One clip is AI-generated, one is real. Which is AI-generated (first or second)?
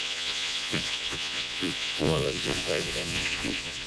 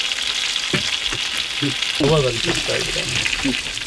first